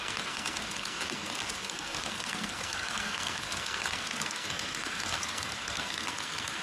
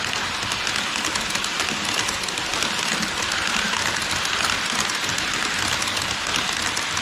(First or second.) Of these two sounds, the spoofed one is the first